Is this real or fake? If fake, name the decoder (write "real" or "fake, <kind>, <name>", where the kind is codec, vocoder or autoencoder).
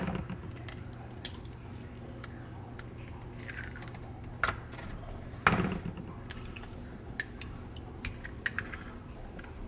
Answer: real